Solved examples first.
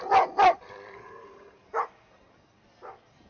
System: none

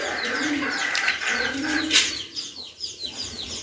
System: vocoder, Vocos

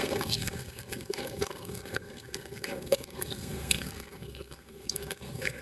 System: codec, SNAC